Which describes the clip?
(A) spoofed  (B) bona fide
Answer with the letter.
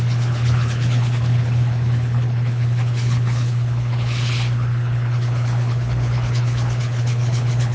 A